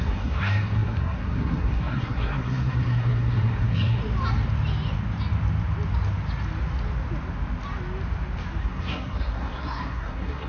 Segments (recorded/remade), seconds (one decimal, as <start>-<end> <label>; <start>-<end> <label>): 0.0-4.0 remade; 4.0-8.6 recorded; 8.6-10.5 remade